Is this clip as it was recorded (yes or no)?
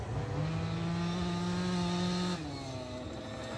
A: yes